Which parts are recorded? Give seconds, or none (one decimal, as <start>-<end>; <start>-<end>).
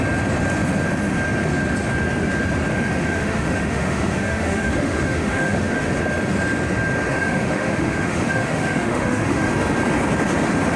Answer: 0.0-2.7; 5.9-7.1; 9.5-10.8